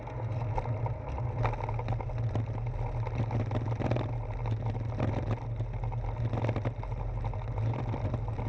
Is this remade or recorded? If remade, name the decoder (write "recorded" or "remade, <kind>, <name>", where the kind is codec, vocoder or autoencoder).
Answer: recorded